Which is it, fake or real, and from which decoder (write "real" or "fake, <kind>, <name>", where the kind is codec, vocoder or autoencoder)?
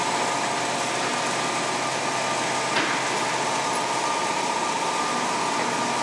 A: real